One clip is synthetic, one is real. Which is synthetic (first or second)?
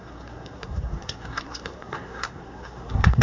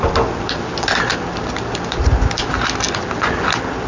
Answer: first